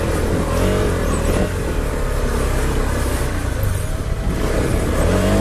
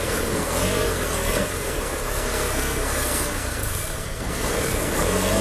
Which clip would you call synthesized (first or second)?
second